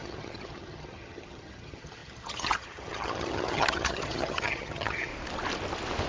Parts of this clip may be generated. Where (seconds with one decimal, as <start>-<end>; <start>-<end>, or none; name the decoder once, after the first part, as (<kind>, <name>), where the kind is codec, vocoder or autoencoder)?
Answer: 0.0-5.1 (vocoder, HiFi-GAN)